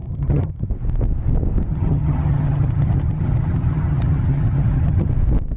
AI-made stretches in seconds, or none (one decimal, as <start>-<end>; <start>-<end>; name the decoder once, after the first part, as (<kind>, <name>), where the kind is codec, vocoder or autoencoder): 0.0-0.7 (vocoder, HiFi-GAN); 1.7-5.1